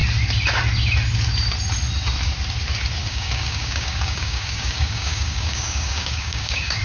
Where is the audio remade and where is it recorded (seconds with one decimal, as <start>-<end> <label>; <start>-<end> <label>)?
0.0-3.0 recorded; 3.0-6.8 remade

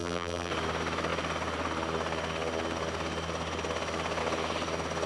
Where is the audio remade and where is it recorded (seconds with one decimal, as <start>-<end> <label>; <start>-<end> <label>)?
0.0-0.5 remade; 0.5-5.1 recorded